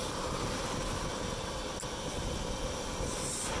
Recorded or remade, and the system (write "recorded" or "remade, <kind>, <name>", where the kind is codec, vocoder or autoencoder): recorded